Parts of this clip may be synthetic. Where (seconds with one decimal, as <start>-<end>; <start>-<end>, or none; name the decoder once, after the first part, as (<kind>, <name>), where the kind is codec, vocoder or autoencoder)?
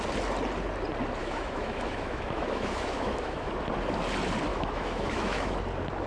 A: 1.2-3.5 (autoencoder, DAC-VAE); 4.5-5.5